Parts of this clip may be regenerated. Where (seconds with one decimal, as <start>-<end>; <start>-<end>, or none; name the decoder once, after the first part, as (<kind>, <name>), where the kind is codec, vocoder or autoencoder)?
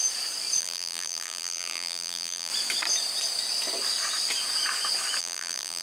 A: 0.6-2.5 (vocoder, BigVGAN v2); 5.2-5.8